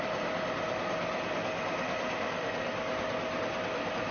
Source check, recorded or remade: recorded